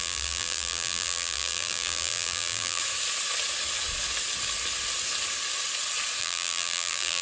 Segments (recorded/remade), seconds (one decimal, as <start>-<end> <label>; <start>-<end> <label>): 0.0-2.8 remade; 2.8-6.2 recorded; 6.2-7.2 remade